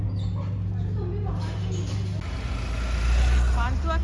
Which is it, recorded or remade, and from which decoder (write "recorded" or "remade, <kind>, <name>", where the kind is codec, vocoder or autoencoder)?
recorded